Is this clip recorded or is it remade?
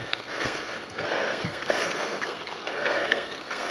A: remade